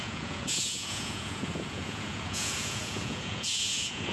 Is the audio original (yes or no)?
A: no